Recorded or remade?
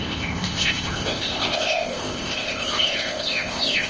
remade